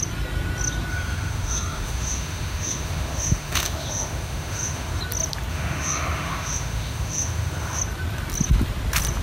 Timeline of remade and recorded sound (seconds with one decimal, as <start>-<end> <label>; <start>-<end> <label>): 0.0-0.9 recorded; 0.9-5.0 remade; 5.0-5.5 recorded; 5.5-7.8 remade; 7.8-9.2 recorded